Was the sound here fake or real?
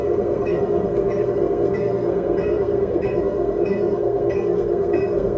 fake